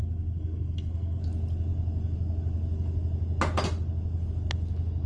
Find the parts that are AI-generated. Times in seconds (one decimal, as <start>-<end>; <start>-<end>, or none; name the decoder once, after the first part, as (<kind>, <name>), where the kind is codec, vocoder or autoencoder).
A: 0.0-1.2 (codec, SNAC)